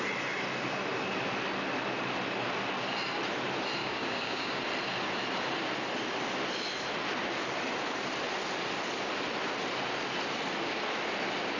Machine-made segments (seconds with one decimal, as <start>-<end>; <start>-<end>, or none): 3.8-4.6